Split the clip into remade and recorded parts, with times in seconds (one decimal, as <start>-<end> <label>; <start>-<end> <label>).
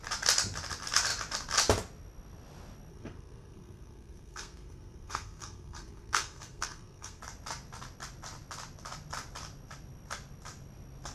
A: 0.0-2.9 recorded; 2.9-7.2 remade; 7.2-11.1 recorded